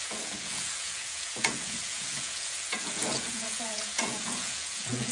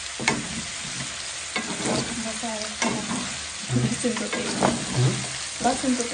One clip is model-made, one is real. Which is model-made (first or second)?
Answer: first